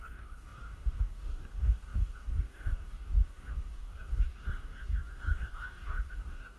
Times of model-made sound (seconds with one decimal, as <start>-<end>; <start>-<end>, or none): 0.0-6.6